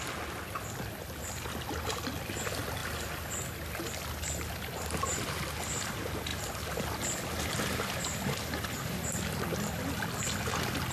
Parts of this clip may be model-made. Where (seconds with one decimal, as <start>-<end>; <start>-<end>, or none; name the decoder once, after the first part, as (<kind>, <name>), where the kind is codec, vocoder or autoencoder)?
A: none